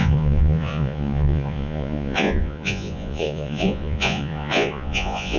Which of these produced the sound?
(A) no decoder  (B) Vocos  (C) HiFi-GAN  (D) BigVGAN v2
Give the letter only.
B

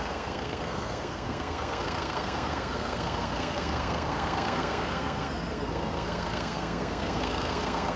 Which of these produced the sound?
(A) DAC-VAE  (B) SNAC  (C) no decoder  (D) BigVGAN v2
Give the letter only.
B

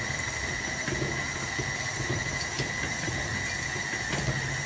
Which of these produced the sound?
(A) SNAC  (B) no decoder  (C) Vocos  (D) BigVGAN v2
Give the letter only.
D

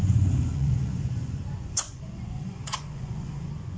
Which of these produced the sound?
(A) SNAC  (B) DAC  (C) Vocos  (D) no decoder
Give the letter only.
C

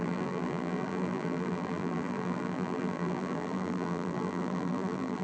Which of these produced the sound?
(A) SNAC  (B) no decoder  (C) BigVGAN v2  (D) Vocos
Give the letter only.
C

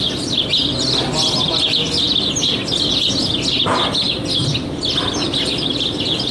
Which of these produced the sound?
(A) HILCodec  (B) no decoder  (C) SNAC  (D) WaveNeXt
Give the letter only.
B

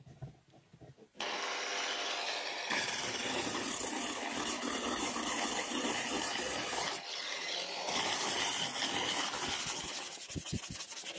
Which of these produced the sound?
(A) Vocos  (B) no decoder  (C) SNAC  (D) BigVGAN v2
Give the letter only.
B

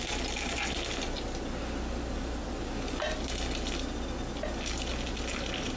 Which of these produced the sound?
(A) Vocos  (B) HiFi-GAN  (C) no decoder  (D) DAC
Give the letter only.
C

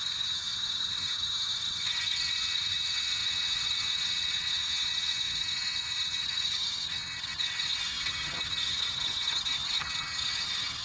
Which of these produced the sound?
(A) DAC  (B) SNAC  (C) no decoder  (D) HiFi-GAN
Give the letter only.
D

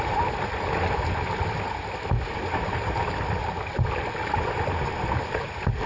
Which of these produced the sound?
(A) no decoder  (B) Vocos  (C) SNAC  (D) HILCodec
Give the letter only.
A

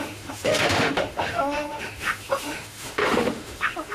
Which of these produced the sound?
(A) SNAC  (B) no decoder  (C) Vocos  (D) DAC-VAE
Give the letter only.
D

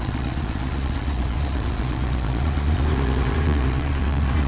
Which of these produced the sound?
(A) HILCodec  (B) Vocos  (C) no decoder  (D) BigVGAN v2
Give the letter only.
B